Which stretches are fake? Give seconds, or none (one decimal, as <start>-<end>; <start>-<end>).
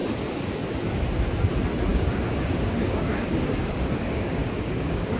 1.9-5.2